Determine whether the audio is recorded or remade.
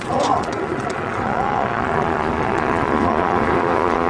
remade